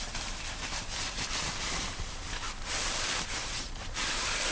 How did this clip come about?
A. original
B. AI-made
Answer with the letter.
B